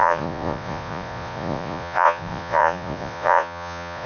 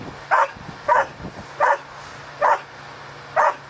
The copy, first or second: first